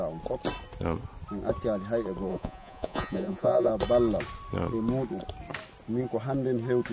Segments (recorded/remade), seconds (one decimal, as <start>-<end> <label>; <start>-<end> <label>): 0.0-2.3 recorded; 2.3-3.7 remade; 3.7-6.9 recorded